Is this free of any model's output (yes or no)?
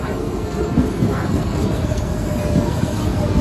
no